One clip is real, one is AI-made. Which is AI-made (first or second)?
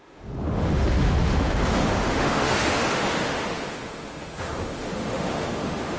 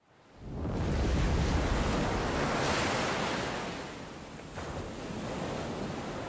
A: first